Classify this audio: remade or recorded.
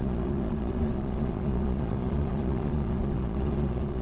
remade